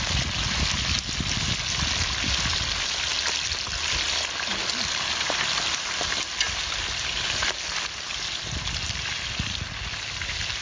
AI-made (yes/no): no